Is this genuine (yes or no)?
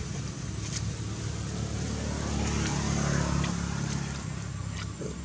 yes